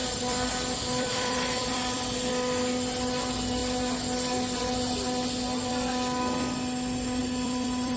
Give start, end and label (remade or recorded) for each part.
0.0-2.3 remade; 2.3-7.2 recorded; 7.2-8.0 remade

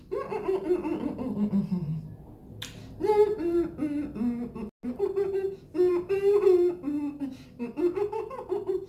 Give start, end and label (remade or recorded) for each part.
0.0-8.9 recorded

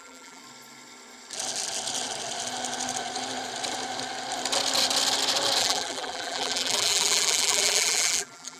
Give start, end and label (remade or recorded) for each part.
0.0-0.4 remade; 0.4-5.6 recorded; 5.6-8.6 remade

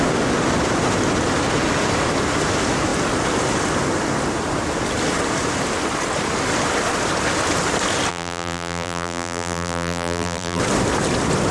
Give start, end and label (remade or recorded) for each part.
0.0-8.1 recorded; 8.1-10.6 remade; 10.6-11.5 recorded

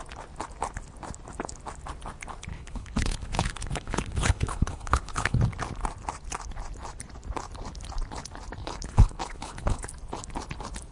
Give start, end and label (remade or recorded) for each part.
0.0-2.5 recorded; 2.5-5.4 remade; 5.4-8.6 recorded; 8.6-9.9 remade; 9.9-10.9 recorded

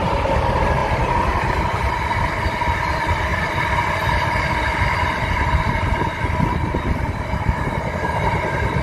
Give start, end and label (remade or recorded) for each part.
0.0-8.8 recorded